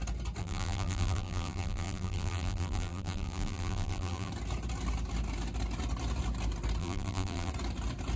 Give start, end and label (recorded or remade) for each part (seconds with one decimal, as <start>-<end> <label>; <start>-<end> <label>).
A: 0.0-0.4 recorded; 0.4-4.3 remade; 4.3-6.8 recorded; 6.8-7.5 remade; 7.5-8.2 recorded